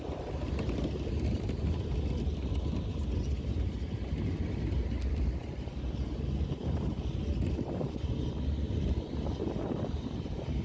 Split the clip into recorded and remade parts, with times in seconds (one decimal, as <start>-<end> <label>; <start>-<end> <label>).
0.0-10.6 recorded